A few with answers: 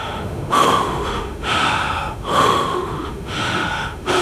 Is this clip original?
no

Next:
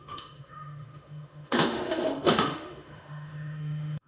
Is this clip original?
no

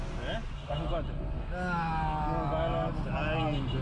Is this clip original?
yes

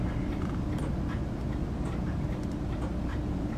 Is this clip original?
yes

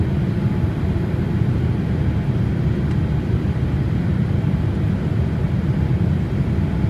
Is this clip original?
yes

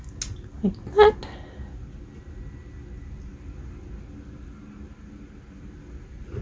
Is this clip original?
yes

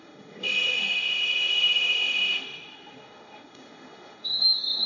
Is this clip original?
no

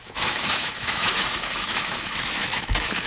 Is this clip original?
no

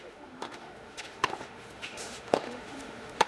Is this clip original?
no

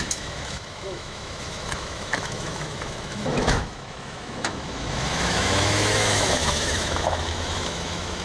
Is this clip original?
no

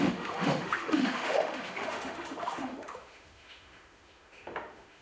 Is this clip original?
no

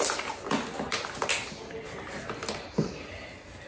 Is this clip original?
yes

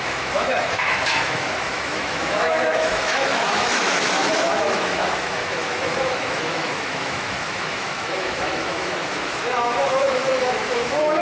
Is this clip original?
no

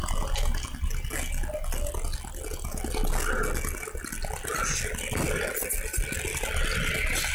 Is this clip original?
yes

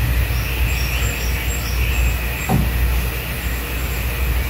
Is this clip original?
yes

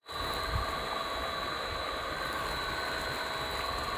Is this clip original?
yes